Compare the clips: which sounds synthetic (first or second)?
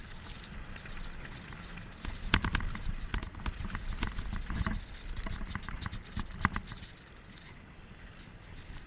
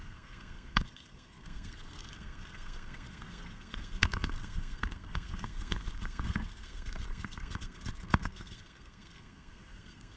second